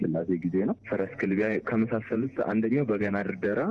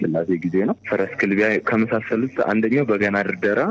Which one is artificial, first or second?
first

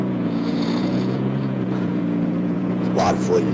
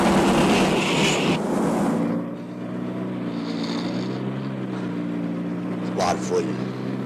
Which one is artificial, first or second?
first